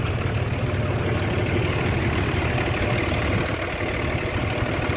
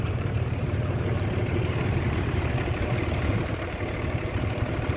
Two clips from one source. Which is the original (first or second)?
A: first